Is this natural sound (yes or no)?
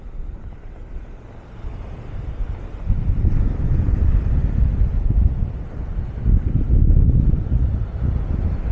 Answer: yes